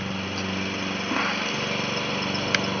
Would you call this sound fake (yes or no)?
no